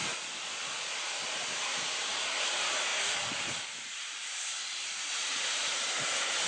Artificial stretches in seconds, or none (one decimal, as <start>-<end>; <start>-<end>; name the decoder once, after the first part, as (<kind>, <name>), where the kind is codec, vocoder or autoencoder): 1.3-2.9 (vocoder, BigVGAN v2); 3.4-6.5